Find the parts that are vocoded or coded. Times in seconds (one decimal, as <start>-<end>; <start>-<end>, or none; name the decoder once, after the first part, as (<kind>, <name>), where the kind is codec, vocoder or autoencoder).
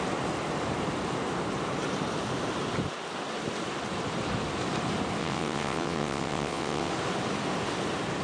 5.2-6.9 (vocoder, WaveNeXt)